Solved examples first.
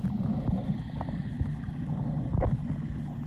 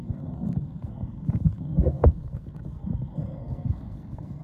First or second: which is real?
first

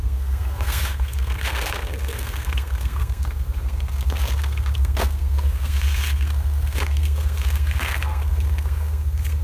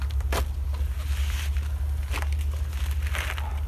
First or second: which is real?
second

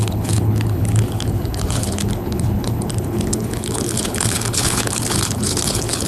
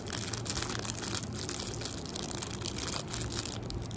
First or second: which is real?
second